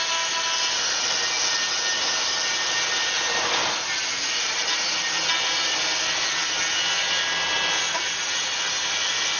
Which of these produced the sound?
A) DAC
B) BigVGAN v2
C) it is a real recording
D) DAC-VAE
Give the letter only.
C